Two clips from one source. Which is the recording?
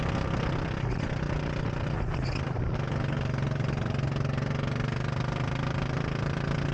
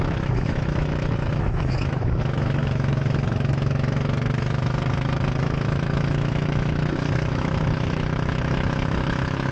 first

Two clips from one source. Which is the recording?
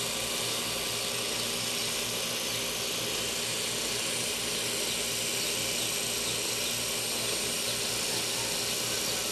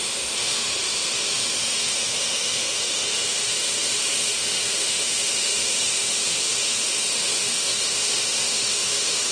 first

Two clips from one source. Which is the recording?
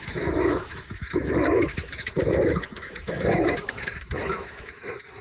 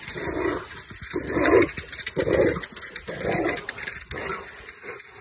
second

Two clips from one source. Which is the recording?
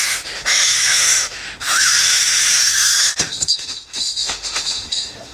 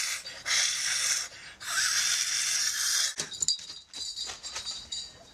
second